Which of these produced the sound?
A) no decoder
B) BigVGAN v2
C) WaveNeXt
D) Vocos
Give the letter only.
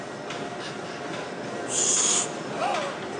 A